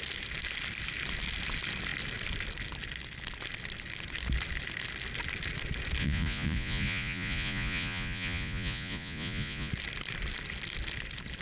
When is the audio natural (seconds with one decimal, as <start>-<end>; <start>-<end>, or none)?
0.0-6.0; 9.7-11.4